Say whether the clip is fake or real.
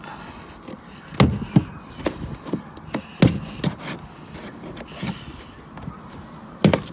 real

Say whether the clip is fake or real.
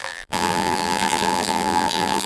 fake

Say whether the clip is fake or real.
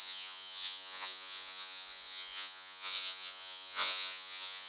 fake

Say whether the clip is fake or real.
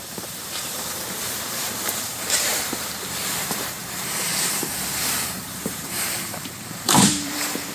fake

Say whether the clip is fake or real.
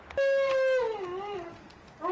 real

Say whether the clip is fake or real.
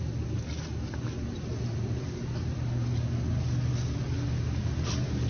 real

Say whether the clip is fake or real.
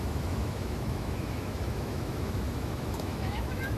fake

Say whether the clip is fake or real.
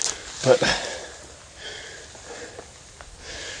real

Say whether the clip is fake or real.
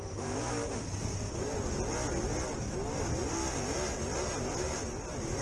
real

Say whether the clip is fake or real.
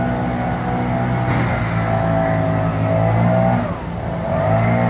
real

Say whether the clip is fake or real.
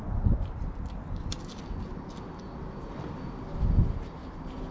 real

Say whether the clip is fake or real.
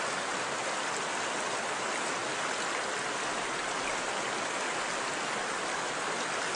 real